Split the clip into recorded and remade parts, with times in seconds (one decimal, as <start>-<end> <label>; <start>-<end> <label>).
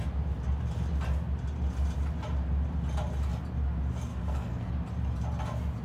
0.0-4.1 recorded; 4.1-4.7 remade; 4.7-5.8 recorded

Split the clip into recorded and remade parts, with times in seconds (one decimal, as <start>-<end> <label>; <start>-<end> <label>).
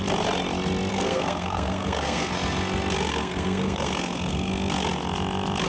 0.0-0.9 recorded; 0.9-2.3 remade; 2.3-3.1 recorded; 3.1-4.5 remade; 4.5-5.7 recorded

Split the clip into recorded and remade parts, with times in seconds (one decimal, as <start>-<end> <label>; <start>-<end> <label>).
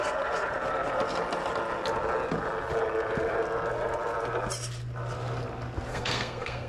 0.0-5.9 recorded; 5.9-6.7 remade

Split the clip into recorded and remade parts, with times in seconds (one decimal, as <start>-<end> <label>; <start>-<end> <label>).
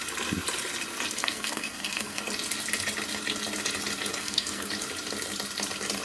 0.0-1.2 recorded; 1.2-2.2 remade; 2.2-4.1 recorded; 4.1-4.7 remade; 4.7-6.0 recorded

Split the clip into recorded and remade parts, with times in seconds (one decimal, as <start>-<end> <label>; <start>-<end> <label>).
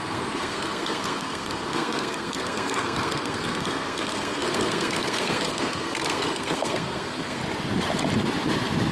0.0-7.4 remade; 7.4-8.9 recorded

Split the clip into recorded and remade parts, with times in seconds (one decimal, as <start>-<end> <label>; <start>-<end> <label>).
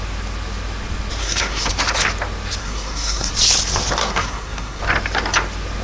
0.0-1.2 recorded; 1.2-1.7 remade; 1.7-2.6 recorded; 2.6-3.3 remade; 3.3-4.0 recorded; 4.0-4.8 remade; 4.8-5.8 recorded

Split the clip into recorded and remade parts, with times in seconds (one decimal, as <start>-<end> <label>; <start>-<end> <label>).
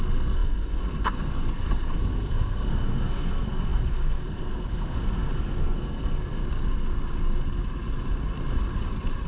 0.0-6.4 remade; 6.4-9.3 recorded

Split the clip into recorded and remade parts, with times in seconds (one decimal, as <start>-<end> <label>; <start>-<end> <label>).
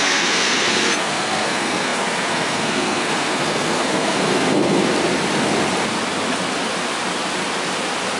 0.0-4.8 remade; 4.8-8.2 recorded